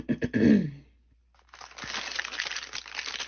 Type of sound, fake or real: real